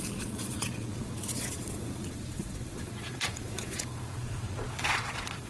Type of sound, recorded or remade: remade